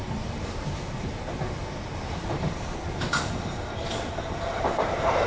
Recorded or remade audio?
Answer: remade